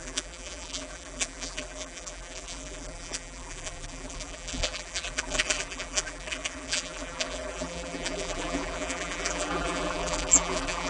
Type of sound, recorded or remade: remade